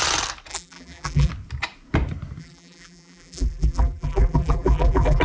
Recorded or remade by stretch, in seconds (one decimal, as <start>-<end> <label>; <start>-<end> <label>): 0.0-0.5 recorded; 0.5-1.3 remade; 1.3-2.4 recorded; 2.4-5.2 remade